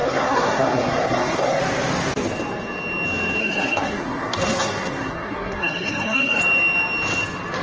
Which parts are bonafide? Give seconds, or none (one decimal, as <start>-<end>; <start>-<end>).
1.6-3.4; 6.4-7.6

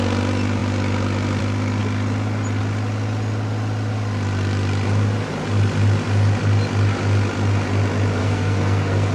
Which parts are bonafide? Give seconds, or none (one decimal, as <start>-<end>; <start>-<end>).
0.0-8.2